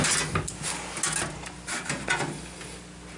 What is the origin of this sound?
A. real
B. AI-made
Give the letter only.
A